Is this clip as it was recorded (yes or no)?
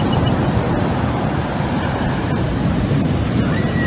no